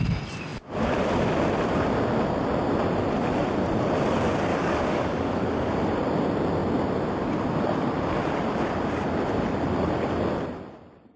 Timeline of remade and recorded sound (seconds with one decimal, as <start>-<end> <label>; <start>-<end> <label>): 0.0-4.5 recorded; 4.5-5.7 remade; 5.7-11.2 recorded